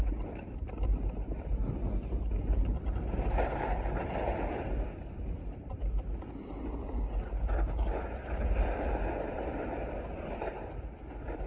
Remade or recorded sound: recorded